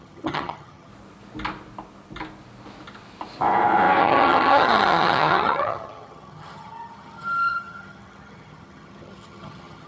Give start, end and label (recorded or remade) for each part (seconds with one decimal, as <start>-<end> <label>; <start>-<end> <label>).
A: 0.0-0.9 remade; 0.9-4.0 recorded; 4.0-9.9 remade